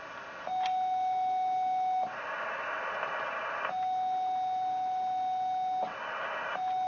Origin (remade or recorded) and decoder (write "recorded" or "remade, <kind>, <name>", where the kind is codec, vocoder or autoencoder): recorded